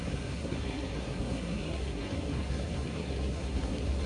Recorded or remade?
remade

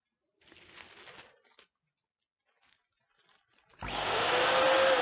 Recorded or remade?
recorded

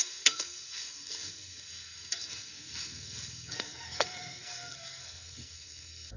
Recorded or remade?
remade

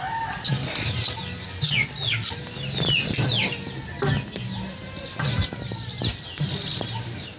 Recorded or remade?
recorded